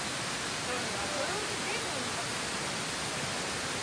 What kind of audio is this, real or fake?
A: real